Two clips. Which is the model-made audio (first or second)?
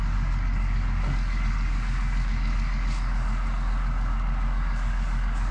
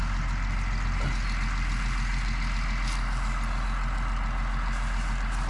first